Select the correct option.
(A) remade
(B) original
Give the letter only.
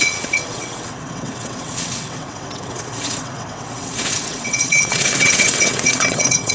A